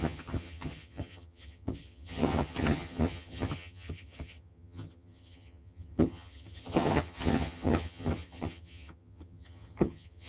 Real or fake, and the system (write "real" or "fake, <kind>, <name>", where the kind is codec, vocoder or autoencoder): fake, vocoder, HiFi-GAN